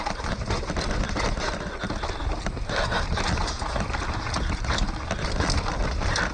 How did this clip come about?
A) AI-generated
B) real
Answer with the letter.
B